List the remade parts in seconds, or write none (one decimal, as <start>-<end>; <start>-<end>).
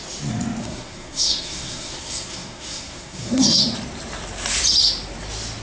0.6-3.6